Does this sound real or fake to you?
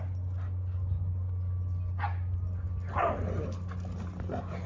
real